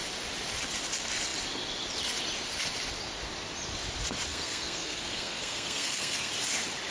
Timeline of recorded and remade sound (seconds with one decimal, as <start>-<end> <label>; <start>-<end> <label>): 0.0-4.3 recorded; 4.3-6.3 remade; 6.3-6.9 recorded